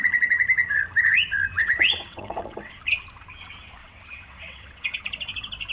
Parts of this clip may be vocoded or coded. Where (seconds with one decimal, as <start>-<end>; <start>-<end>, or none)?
1.6-2.8; 3.8-5.0